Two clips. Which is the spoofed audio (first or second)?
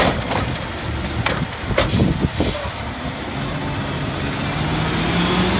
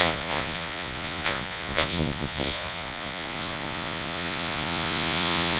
second